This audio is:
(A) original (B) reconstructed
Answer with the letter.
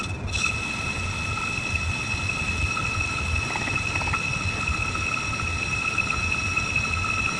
A